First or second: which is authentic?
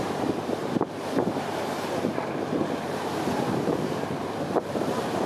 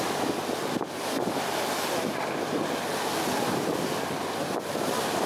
second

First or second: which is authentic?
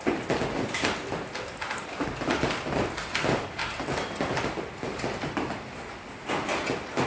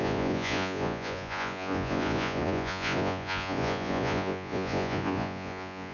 first